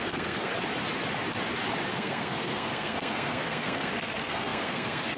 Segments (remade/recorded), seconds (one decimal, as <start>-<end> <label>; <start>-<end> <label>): 0.0-0.5 remade; 0.5-1.9 recorded; 1.9-5.2 remade